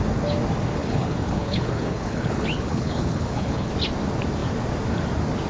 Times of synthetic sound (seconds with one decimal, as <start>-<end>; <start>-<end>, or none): 0.8-3.7